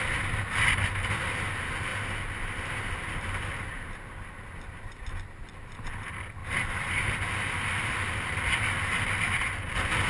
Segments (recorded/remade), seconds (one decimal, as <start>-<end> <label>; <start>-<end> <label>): 0.0-10.1 recorded